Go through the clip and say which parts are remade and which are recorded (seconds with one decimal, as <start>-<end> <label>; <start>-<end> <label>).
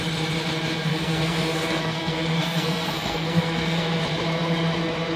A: 0.0-0.9 recorded; 0.9-4.0 remade; 4.0-5.2 recorded